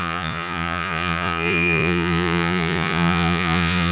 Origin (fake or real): fake